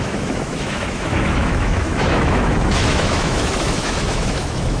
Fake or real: fake